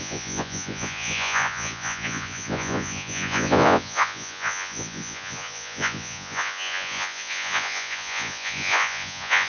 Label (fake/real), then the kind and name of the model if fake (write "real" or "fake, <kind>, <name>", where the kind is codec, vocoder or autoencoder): fake, vocoder, Vocos